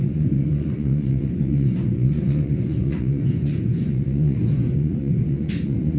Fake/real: fake